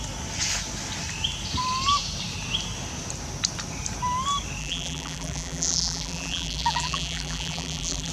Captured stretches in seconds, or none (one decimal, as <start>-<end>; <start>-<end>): 0.0-4.6

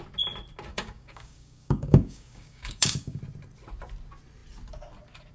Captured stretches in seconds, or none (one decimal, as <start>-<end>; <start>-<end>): 0.0-0.7; 3.2-5.3

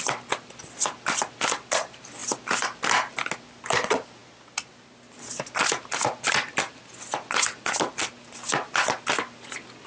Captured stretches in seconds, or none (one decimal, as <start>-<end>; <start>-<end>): 0.0-9.9

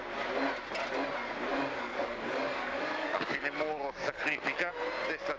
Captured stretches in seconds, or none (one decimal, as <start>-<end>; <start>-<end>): 0.0-1.5; 4.7-5.4

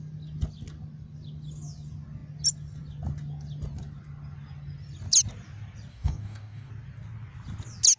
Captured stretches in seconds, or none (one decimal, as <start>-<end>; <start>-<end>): 0.0-5.9; 6.7-8.0